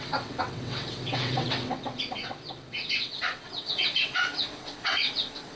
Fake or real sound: fake